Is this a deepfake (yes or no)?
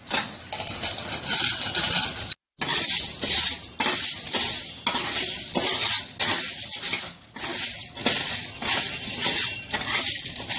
no